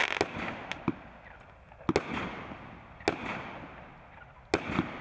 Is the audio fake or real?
real